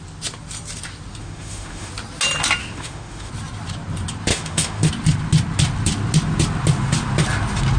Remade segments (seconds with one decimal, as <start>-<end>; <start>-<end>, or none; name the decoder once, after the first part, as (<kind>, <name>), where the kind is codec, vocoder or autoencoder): 1.2-1.9 (autoencoder, DAC-VAE); 2.6-3.3; 4.3-4.9